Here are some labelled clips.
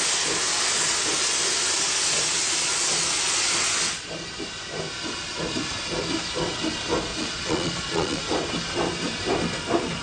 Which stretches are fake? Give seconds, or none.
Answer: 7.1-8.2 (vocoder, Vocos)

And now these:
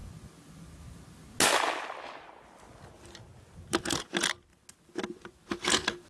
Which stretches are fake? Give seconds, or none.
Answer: none